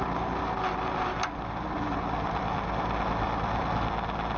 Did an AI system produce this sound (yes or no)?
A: no